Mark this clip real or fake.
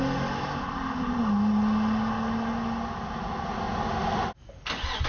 real